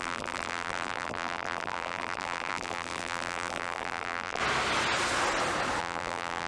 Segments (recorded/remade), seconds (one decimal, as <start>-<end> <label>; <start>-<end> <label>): 0.0-4.4 remade; 4.4-5.8 recorded; 5.8-6.5 remade